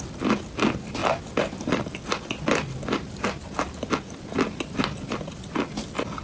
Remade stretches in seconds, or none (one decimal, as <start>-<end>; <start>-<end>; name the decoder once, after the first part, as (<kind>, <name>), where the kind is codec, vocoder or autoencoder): none

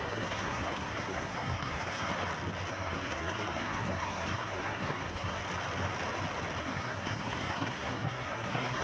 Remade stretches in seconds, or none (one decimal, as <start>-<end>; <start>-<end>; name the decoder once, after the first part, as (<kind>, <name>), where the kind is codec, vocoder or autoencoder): 0.0-2.1 (codec, SNAC); 2.7-5.4; 6.6-8.8

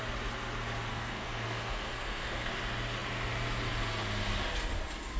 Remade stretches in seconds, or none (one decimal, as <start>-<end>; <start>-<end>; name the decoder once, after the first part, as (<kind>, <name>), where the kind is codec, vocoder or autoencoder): 0.9-2.5 (codec, SNAC)

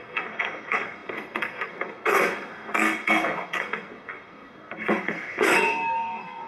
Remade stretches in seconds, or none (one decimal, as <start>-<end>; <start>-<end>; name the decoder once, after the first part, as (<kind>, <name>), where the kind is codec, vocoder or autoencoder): 0.0-6.5 (codec, SNAC)

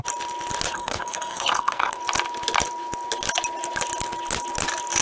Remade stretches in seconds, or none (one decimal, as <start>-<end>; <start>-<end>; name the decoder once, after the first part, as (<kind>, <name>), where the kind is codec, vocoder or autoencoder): 0.7-2.0 (codec, SNAC)

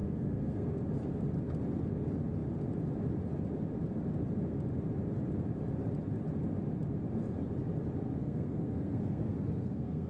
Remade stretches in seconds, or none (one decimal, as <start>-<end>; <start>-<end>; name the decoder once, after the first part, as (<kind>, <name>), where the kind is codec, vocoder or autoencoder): 0.0-0.7 (codec, SNAC); 8.2-10.1

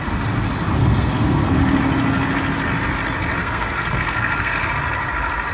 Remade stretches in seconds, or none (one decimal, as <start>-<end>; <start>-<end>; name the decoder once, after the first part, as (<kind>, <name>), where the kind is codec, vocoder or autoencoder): 0.8-1.5 (codec, SNAC); 3.4-4.7